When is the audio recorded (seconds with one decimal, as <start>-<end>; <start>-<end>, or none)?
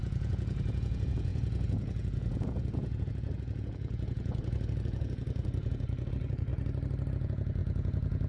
6.5-7.1